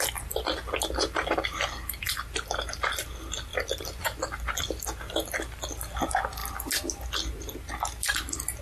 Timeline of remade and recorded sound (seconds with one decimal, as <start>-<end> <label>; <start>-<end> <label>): 0.0-8.6 recorded